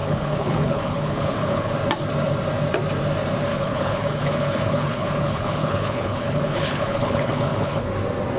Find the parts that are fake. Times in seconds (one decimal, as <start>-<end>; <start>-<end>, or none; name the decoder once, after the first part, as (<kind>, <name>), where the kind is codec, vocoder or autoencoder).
0.0-1.7 (codec, HILCodec); 3.5-7.9